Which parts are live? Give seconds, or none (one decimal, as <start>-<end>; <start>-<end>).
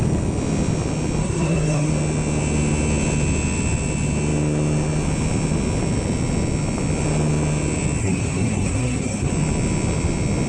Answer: 0.0-1.2; 1.9-8.0; 9.3-10.5